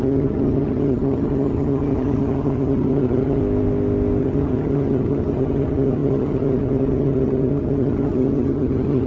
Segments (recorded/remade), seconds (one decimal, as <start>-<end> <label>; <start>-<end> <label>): 0.0-3.4 remade; 3.4-4.2 recorded; 4.2-9.1 remade